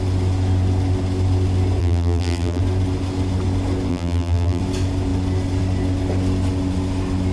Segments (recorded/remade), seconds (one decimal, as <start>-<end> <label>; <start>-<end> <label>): 0.0-1.8 recorded; 1.8-2.6 remade; 2.6-3.9 recorded; 3.9-4.6 remade; 4.6-7.3 recorded